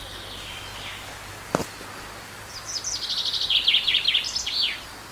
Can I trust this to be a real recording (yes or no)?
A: yes